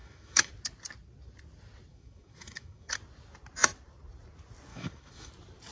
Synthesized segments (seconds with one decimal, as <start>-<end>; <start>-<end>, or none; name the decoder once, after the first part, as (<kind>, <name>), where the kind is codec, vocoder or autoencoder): 0.0-0.5 (autoencoder, DAC-VAE); 1.9-2.9; 4.7-5.3